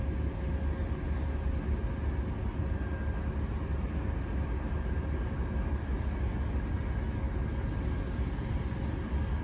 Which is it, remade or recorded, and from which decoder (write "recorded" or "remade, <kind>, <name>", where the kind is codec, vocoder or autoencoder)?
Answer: recorded